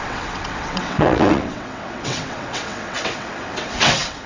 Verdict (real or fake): fake